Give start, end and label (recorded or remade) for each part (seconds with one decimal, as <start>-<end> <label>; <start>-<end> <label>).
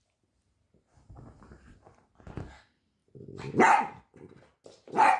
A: 0.0-5.2 recorded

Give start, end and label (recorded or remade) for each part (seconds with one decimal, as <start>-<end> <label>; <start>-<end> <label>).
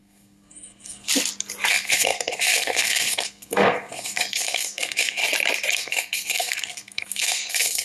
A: 0.0-1.1 remade; 1.1-1.7 recorded; 1.7-5.2 remade; 5.2-5.7 recorded; 5.7-7.8 remade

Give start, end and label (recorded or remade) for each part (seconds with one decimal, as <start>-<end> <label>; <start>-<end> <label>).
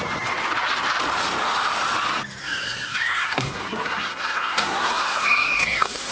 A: 0.0-2.4 recorded; 2.4-6.1 remade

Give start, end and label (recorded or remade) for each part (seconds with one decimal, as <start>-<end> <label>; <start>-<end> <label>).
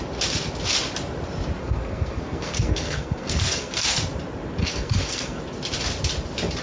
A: 0.0-1.6 recorded; 1.6-4.0 remade; 4.0-4.6 recorded; 4.6-5.4 remade; 5.4-6.6 recorded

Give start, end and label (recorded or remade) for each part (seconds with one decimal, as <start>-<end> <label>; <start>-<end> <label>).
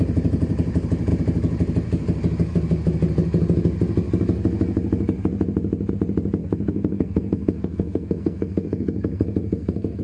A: 0.0-6.4 recorded; 6.4-10.0 remade